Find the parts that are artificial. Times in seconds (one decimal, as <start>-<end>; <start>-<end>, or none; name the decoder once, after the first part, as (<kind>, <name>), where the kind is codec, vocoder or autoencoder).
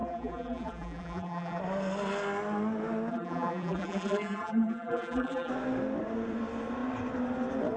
0.0-1.6 (vocoder, BigVGAN v2); 3.1-5.5